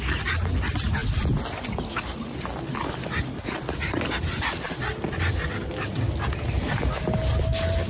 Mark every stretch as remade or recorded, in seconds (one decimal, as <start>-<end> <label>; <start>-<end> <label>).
0.0-7.9 recorded